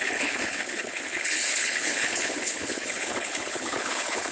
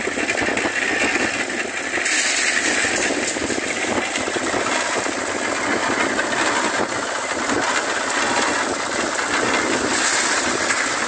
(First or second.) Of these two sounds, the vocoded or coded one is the first